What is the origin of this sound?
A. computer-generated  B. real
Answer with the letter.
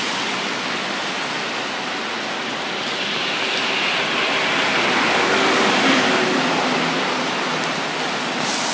B